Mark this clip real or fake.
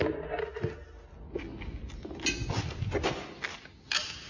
real